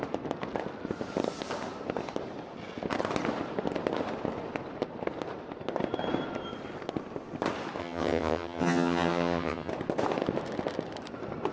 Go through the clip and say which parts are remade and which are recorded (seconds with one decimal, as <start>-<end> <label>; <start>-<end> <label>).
0.0-7.8 recorded; 7.8-9.7 remade; 9.7-11.5 recorded